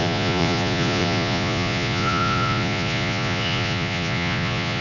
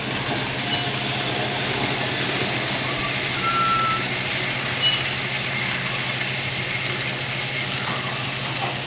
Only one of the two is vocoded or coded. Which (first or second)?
first